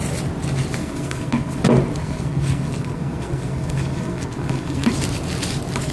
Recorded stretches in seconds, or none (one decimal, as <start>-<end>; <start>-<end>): 0.0-0.8; 1.6-2.0; 4.9-5.9